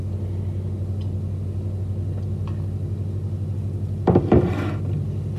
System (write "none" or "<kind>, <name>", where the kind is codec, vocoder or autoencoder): none